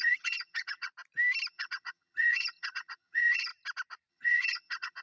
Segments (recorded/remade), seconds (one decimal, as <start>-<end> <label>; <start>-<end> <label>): 0.0-0.9 remade; 0.9-1.5 recorded; 1.5-3.5 remade; 3.5-4.1 recorded; 4.1-5.0 remade